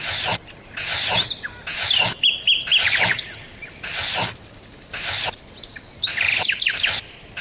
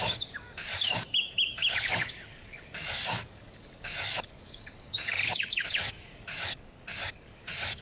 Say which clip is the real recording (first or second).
first